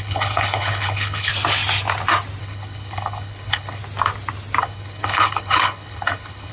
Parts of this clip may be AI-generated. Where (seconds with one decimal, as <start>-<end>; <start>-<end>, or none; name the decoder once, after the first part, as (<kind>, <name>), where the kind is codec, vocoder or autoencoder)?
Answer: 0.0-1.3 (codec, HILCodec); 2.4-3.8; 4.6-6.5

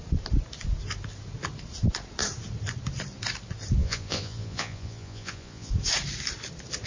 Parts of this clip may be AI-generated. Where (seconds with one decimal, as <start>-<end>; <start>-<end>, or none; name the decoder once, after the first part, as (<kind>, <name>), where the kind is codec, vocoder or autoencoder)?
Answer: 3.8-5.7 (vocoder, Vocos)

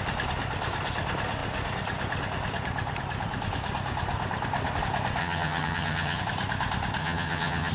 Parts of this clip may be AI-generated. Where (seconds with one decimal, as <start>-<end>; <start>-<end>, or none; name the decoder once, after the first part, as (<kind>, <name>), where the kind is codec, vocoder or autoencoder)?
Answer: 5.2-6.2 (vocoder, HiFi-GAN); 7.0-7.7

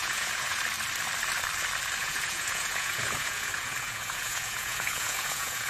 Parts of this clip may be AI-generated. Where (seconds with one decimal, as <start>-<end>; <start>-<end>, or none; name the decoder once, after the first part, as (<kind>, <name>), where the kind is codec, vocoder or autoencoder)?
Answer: 0.0-0.6 (vocoder, Vocos); 2.0-5.7

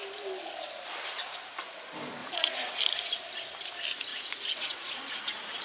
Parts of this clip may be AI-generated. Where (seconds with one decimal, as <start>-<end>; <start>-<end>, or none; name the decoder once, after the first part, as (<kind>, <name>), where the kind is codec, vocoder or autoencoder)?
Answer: 2.2-2.8 (vocoder, Vocos); 4.1-5.6

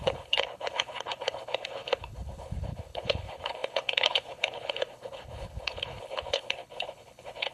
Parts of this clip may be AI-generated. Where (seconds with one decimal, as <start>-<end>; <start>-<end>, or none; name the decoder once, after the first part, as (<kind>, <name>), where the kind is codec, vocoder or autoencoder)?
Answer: 0.0-7.5 (codec, HILCodec)

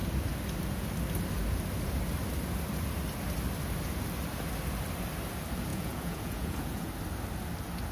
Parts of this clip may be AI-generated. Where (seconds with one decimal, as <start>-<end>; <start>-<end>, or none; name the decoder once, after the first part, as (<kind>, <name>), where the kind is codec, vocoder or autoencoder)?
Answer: 5.7-6.9 (vocoder, Vocos)